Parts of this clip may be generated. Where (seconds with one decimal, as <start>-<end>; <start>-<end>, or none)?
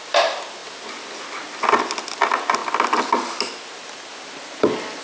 none